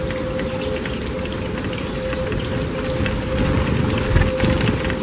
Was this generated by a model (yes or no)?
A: no